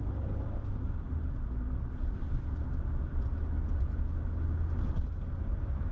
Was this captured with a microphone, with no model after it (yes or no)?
yes